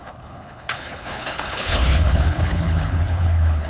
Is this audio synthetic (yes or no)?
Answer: yes